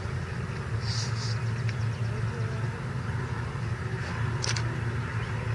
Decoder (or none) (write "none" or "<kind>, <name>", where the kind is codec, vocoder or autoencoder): none